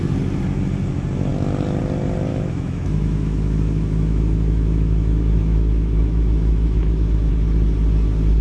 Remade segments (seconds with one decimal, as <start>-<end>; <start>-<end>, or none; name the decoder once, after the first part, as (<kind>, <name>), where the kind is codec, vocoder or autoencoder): 2.3-7.3 (autoencoder, DAC-VAE)